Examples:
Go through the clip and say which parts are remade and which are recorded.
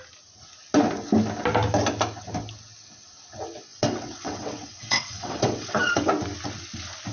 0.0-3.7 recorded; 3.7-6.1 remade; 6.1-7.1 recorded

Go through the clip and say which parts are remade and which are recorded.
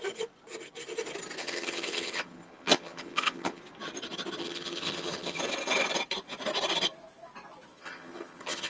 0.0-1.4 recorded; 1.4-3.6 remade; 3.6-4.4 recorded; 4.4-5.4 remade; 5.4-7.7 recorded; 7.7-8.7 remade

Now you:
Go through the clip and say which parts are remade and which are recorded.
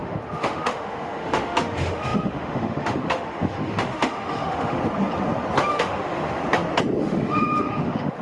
0.0-4.8 remade; 4.8-5.7 recorded; 5.7-6.4 remade; 6.4-7.0 recorded; 7.0-8.2 remade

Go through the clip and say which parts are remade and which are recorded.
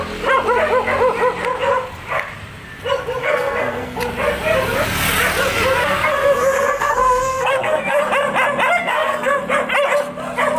0.0-3.2 recorded; 3.2-4.0 remade; 4.0-5.8 recorded; 5.8-8.0 remade; 8.0-8.8 recorded; 8.8-9.4 remade; 9.4-10.6 recorded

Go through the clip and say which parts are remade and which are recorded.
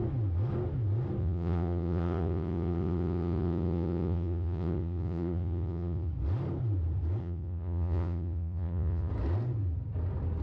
0.0-1.2 recorded; 1.2-6.1 remade; 6.1-7.2 recorded; 7.2-9.1 remade; 9.1-10.4 recorded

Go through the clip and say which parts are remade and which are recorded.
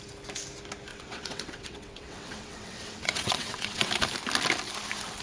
0.0-0.9 recorded; 0.9-3.9 remade; 3.9-5.2 recorded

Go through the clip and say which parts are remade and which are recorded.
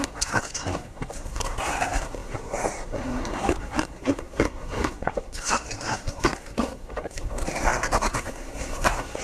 0.0-9.2 remade